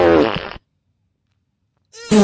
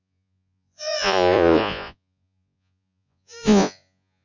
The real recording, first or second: first